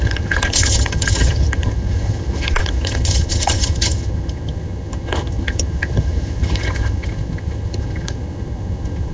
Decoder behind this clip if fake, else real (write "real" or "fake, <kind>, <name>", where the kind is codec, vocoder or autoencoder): fake, vocoder, HiFi-GAN